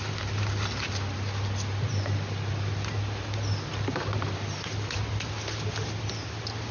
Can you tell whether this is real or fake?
real